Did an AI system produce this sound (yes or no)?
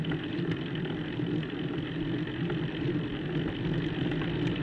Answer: no